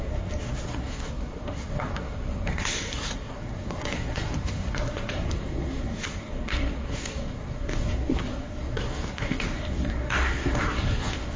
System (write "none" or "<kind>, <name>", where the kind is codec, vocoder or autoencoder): codec, SNAC